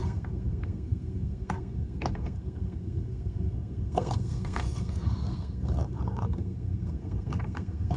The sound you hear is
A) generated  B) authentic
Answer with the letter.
A